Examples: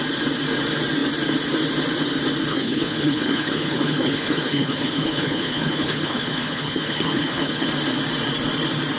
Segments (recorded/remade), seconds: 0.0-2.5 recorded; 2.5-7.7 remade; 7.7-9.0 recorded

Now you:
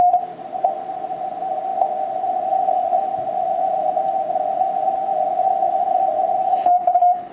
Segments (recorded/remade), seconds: 0.0-6.5 recorded; 6.5-7.3 remade